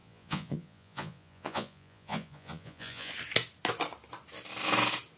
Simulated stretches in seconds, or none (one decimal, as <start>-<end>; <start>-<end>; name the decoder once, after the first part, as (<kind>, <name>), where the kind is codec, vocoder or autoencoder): 0.0-3.1 (vocoder, Vocos)